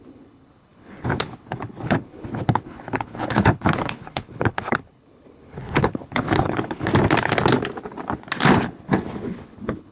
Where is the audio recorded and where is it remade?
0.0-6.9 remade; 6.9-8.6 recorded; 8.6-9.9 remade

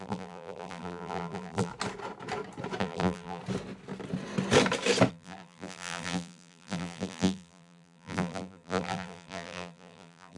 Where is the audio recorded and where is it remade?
0.0-1.7 remade; 1.7-2.8 recorded; 2.8-3.4 remade; 3.4-5.1 recorded; 5.1-10.4 remade

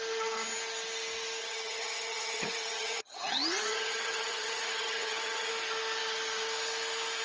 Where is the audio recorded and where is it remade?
0.0-1.4 recorded; 1.4-5.5 remade; 5.5-7.2 recorded

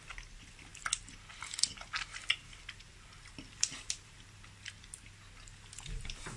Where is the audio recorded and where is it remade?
0.0-6.4 recorded

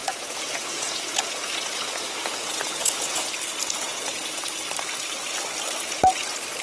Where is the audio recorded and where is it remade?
0.0-3.3 remade; 3.3-3.9 recorded; 3.9-4.4 remade; 4.4-6.6 recorded

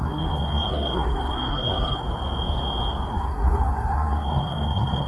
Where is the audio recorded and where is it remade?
0.0-2.0 remade; 2.0-3.1 recorded; 3.1-5.1 remade

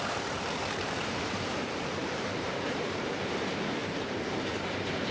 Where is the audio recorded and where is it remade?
0.0-5.1 remade